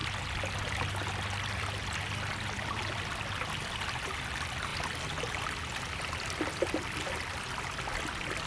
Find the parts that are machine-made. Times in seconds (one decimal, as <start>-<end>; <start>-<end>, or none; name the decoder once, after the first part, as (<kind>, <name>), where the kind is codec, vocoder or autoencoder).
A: none